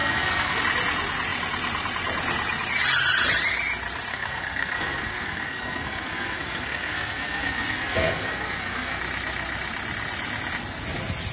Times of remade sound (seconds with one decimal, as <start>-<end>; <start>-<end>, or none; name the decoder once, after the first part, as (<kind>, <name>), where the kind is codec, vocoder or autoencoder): 0.0-0.6 (codec, SNAC); 4.1-9.0